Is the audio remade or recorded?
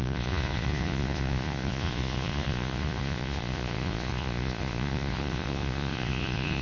remade